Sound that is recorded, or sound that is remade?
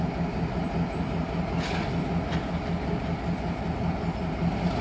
recorded